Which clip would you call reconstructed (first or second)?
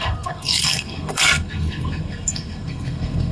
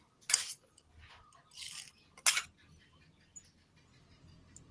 first